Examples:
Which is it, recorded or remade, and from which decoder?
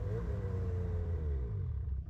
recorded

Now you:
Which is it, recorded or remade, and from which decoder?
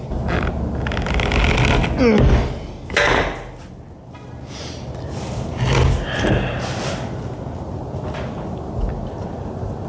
recorded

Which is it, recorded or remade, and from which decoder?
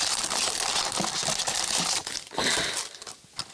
recorded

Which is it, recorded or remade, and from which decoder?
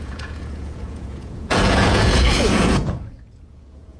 remade, vocoder, Vocos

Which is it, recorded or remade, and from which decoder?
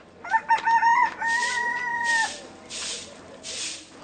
recorded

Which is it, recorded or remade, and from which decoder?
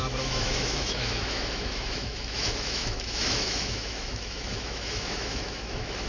remade, autoencoder, DAC-VAE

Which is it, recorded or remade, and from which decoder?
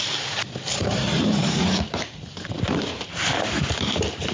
remade, vocoder, BigVGAN v2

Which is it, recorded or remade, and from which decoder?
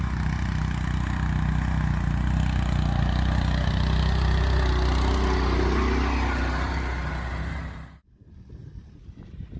recorded